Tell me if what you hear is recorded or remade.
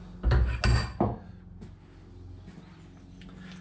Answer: recorded